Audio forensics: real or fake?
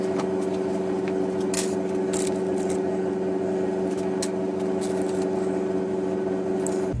real